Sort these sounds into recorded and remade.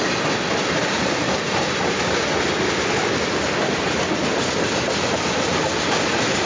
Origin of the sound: recorded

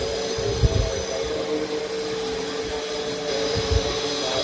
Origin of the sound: recorded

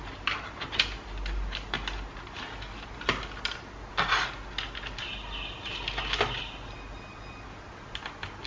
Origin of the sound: recorded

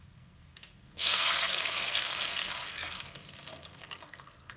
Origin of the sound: remade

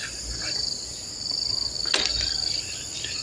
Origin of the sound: recorded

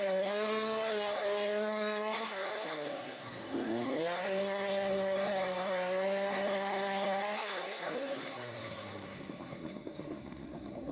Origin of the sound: remade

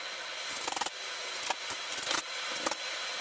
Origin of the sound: recorded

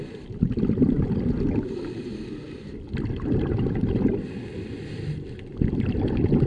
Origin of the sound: recorded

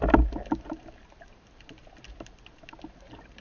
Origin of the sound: recorded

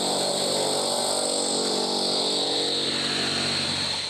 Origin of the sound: recorded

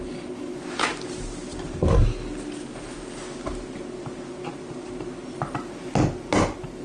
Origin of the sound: recorded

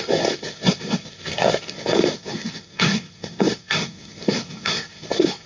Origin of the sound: remade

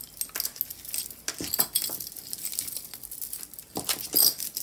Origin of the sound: recorded